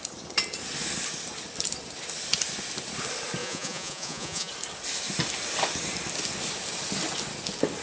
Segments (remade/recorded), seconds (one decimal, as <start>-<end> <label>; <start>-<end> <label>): 0.0-3.4 recorded; 3.4-4.5 remade; 4.5-7.8 recorded